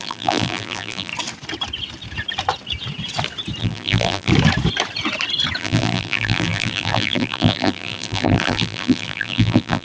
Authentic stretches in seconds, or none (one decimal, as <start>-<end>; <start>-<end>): 1.1-3.6; 4.3-5.6